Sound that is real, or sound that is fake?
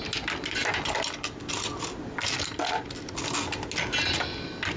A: real